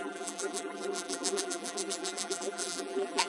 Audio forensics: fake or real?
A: fake